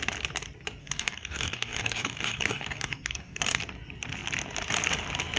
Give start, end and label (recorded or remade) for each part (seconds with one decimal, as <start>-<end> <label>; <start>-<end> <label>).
0.0-0.8 recorded; 0.8-3.6 remade; 3.6-5.4 recorded